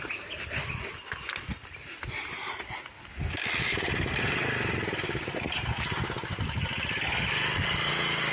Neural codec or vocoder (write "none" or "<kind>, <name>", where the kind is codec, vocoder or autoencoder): none